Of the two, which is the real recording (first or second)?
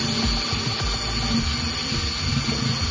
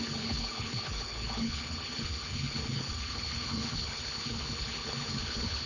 first